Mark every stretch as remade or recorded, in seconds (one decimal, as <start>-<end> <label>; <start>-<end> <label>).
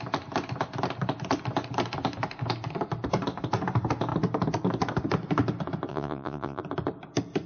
0.0-5.9 recorded; 5.9-6.6 remade; 6.6-7.5 recorded